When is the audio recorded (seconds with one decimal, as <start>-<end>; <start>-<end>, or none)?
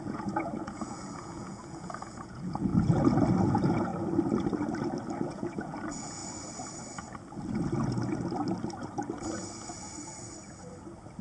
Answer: 2.7-3.5; 3.9-5.2; 6.2-11.2